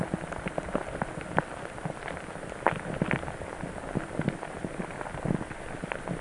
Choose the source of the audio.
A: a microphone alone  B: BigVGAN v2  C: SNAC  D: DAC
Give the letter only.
A